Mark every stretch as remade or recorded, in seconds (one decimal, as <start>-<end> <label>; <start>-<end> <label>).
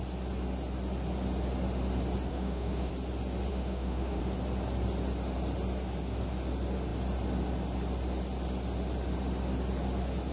0.0-2.3 recorded; 2.3-2.9 remade; 2.9-3.5 recorded; 3.5-4.2 remade; 4.2-10.3 recorded